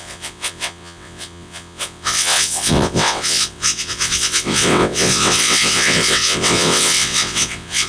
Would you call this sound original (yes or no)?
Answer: no